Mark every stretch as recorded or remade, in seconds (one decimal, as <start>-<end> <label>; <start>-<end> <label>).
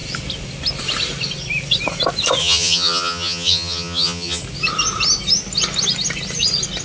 0.0-2.4 recorded; 2.4-4.4 remade; 4.4-6.8 recorded